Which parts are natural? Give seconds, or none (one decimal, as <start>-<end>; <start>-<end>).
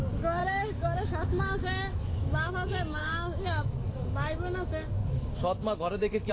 0.0-0.4; 2.5-3.0